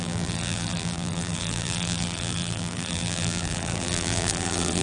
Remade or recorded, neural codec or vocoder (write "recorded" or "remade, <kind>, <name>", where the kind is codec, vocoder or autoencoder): remade, vocoder, BigVGAN v2